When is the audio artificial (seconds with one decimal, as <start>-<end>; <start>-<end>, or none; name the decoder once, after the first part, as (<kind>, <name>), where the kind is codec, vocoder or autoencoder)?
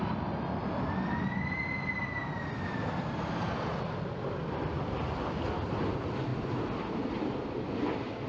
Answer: none